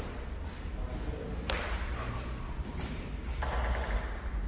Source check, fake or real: real